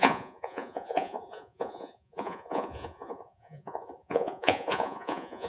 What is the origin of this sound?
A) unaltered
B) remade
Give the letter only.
B